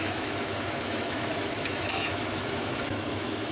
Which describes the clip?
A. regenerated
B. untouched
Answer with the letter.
A